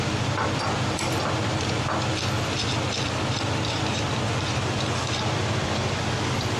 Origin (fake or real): fake